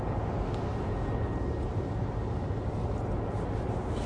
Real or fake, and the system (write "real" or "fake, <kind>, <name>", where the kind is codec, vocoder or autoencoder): real